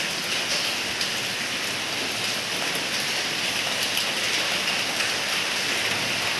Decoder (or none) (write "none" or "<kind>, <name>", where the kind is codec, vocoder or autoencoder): none